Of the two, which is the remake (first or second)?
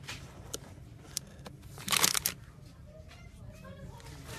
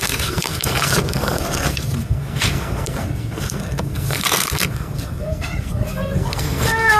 second